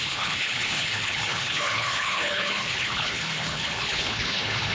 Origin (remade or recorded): remade